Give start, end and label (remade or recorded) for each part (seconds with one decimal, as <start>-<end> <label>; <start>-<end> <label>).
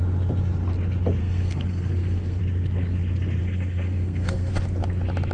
0.0-1.2 recorded; 1.2-2.4 remade; 2.4-3.4 recorded; 3.4-4.5 remade; 4.5-5.3 recorded